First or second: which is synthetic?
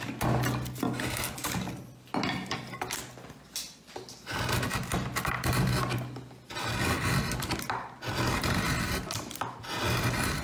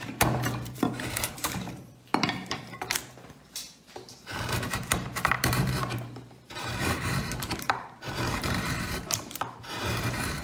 second